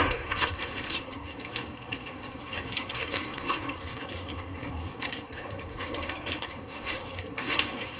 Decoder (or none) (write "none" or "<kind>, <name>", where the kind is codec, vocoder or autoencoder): codec, SNAC